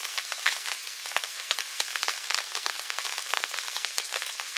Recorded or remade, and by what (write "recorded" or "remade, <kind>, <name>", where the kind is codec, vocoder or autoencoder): remade, codec, SNAC